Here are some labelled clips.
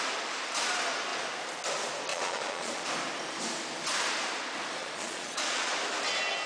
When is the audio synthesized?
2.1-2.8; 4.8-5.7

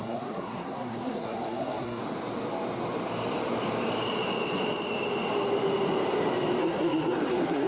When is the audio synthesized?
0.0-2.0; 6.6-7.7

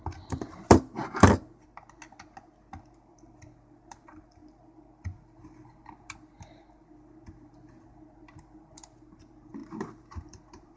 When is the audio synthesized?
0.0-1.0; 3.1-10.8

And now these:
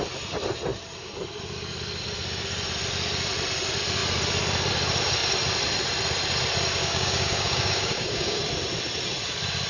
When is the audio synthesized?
6.8-8.4

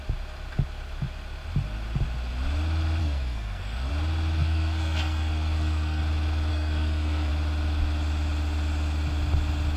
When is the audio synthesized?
3.0-3.9; 4.4-6.0; 6.5-7.3